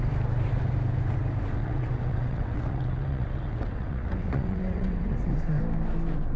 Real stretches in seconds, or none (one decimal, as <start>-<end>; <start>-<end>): 0.0-1.6; 5.4-6.4